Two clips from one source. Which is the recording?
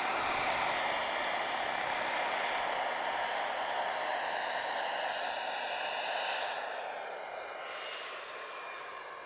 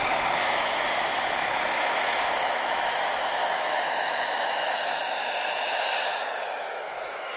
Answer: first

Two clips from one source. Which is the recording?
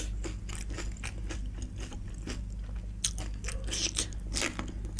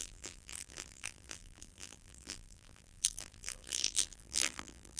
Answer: first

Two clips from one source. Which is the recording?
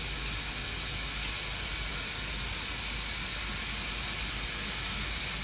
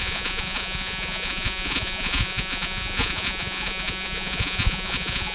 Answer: first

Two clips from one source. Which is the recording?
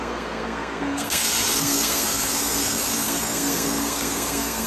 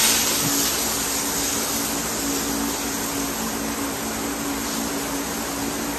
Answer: second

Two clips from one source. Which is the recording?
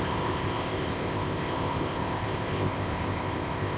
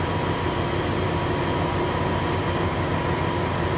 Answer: second